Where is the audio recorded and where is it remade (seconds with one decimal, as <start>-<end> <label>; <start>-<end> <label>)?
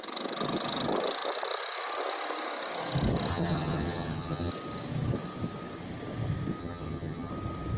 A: 0.0-3.3 recorded; 3.3-4.5 remade; 4.5-6.6 recorded; 6.6-7.3 remade; 7.3-7.8 recorded